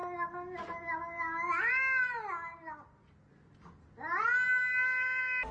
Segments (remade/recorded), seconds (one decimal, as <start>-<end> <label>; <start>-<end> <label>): 0.0-5.5 recorded